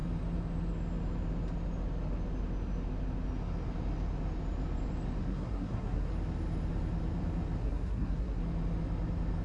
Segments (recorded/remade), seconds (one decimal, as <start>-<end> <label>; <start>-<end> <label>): 0.0-5.2 recorded; 5.2-6.1 remade; 6.1-7.6 recorded; 7.6-8.4 remade; 8.4-9.4 recorded